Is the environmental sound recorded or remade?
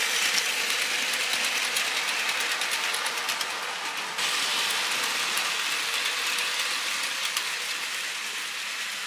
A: recorded